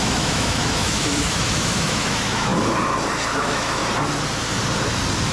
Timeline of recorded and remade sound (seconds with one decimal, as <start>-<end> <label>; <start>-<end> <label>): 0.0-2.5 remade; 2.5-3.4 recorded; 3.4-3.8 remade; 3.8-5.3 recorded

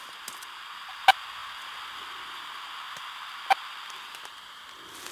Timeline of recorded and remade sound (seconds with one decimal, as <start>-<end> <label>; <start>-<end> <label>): 0.0-5.1 recorded

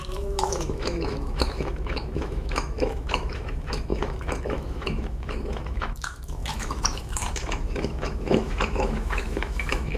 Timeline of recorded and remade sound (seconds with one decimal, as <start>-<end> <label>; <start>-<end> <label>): 0.0-10.0 remade

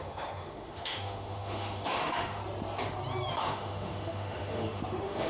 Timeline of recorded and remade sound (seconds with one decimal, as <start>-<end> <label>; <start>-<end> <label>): 0.0-2.4 remade; 2.4-3.3 recorded; 3.3-5.3 remade

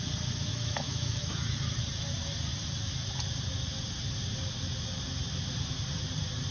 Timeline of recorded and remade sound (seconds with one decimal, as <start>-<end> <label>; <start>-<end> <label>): 0.0-0.5 recorded; 0.5-1.8 remade; 1.8-6.5 recorded

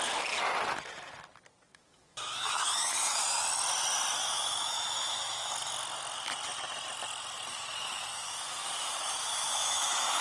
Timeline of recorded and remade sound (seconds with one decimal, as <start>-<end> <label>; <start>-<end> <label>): 0.0-1.7 recorded; 1.7-3.2 remade; 3.2-4.2 recorded; 4.2-5.5 remade; 5.5-7.5 recorded; 7.5-10.2 remade

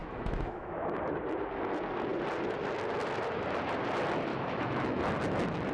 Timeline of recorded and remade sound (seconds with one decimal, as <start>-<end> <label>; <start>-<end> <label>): 0.0-1.0 remade; 1.0-4.3 recorded; 4.3-5.0 remade; 5.0-5.7 recorded